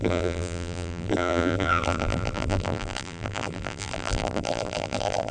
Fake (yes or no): yes